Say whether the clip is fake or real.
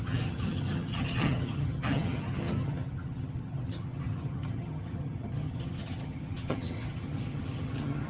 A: fake